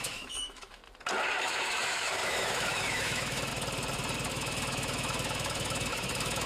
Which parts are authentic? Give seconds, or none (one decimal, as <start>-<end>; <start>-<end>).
0.8-1.4; 3.5-4.3